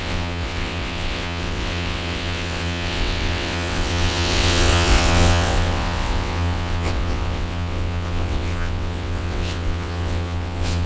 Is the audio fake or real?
fake